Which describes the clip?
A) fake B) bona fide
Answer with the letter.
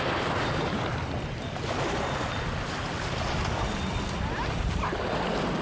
B